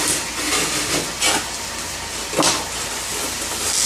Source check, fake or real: real